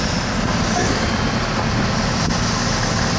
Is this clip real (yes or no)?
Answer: yes